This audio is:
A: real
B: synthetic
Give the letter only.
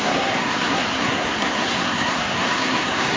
B